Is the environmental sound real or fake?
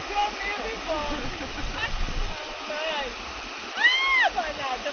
real